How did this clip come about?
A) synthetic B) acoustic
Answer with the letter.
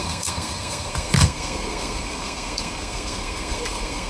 A